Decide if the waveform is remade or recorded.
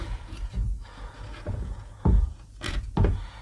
remade